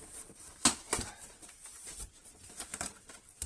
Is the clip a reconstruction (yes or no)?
no